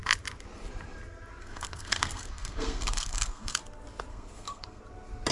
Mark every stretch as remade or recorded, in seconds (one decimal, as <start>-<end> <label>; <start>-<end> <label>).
0.0-1.4 recorded; 1.4-3.6 remade; 3.6-4.1 recorded; 4.1-4.8 remade; 4.8-5.3 recorded